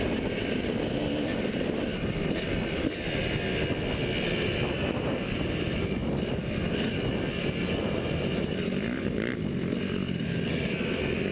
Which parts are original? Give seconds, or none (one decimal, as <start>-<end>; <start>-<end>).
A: 0.0-11.3